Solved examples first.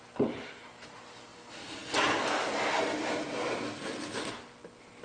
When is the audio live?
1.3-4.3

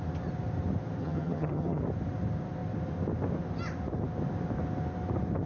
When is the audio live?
0.0-1.0; 1.8-5.5

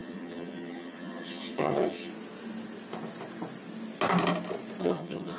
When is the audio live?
2.1-4.8

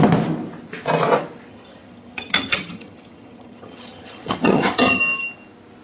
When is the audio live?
0.0-1.5; 5.0-5.8